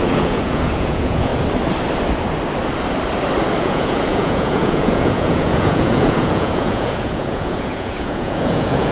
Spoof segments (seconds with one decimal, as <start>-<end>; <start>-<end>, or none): 0.0-1.3; 3.6-8.9